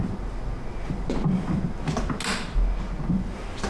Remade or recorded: recorded